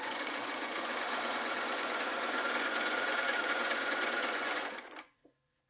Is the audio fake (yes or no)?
yes